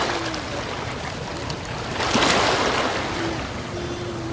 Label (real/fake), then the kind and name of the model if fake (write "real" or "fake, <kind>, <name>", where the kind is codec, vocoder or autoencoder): real